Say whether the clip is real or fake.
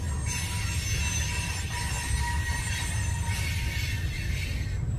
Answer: real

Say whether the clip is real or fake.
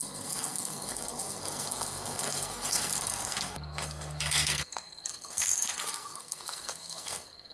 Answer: fake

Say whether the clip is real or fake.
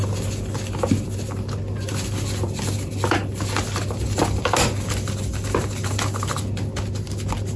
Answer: real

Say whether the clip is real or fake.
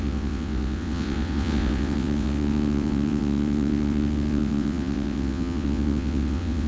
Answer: fake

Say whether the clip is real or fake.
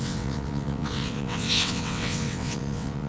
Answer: fake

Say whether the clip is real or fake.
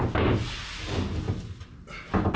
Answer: real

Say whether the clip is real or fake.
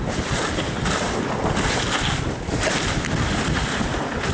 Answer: real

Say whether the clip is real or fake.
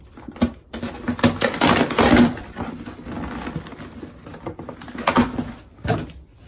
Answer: real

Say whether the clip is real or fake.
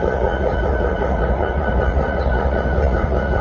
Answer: fake